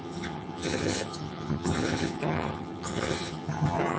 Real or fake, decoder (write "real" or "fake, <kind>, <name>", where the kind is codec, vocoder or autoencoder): fake, vocoder, HiFi-GAN